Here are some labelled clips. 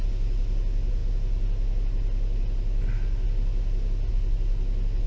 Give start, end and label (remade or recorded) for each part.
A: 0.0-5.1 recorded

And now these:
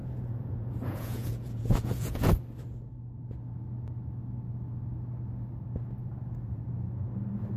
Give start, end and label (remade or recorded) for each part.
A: 0.0-2.3 remade; 2.3-6.0 recorded; 6.0-6.6 remade; 6.6-7.6 recorded

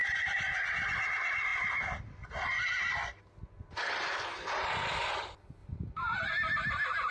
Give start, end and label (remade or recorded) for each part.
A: 0.0-5.6 recorded; 5.6-6.3 remade; 6.3-7.1 recorded

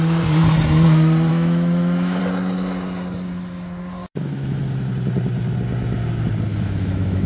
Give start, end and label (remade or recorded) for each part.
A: 0.0-1.3 recorded; 1.3-2.2 remade; 2.2-4.0 recorded; 4.0-4.6 remade; 4.6-6.5 recorded; 6.5-7.3 remade

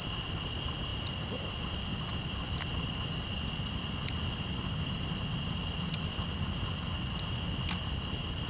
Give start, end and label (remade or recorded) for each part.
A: 0.0-8.5 recorded